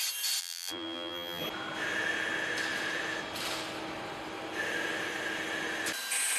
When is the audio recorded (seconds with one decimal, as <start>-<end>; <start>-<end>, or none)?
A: 0.0-0.4; 1.4-6.4